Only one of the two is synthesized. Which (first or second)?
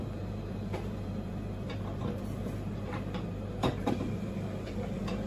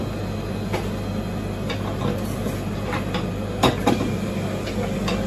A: first